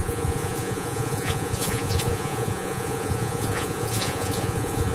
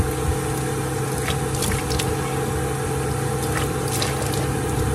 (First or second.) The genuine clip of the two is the second